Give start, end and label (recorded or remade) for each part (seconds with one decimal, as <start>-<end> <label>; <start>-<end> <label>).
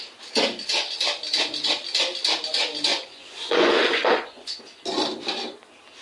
0.0-2.9 recorded; 2.9-4.6 remade; 4.6-6.0 recorded